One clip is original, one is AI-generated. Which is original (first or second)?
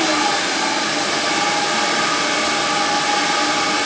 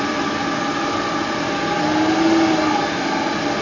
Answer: second